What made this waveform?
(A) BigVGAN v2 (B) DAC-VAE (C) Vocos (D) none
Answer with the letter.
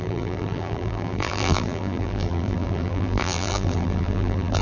A